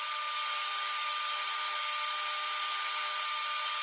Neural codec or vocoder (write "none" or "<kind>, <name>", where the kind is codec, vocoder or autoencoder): none